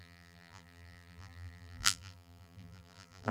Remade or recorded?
remade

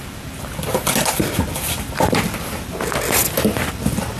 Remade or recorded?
remade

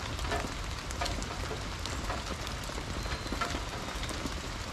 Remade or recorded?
recorded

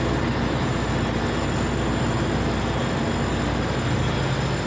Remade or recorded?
recorded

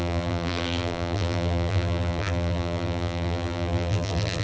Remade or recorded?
remade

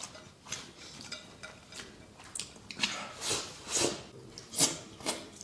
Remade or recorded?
recorded